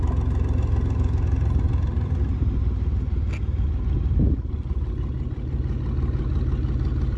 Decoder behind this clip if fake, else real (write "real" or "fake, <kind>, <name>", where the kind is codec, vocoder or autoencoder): real